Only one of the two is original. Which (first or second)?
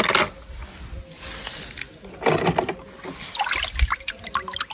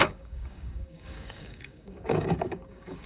first